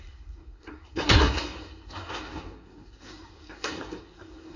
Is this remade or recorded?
remade